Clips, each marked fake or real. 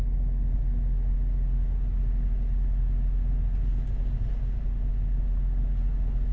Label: real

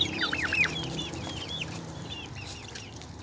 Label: fake